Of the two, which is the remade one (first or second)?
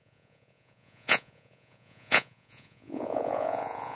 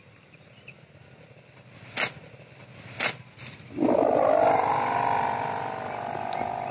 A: first